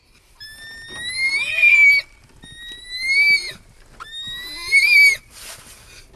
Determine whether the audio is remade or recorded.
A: recorded